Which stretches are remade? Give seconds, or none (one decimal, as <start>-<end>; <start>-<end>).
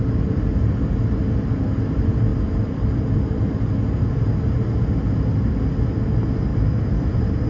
2.3-3.4; 6.5-7.5